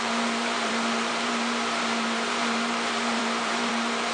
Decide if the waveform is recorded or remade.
remade